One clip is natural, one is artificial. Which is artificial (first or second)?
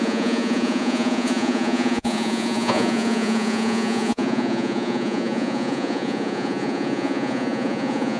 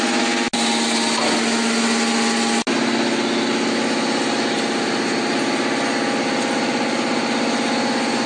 first